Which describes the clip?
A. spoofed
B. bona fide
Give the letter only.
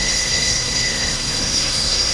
A